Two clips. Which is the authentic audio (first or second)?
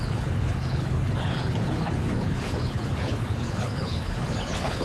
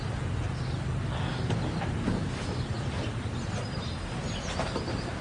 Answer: second